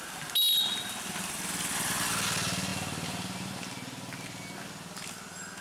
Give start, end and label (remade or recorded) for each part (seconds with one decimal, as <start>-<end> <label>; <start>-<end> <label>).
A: 0.0-5.6 recorded